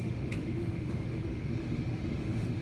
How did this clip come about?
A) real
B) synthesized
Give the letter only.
B